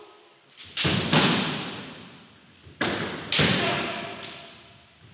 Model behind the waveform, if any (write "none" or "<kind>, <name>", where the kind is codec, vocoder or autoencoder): none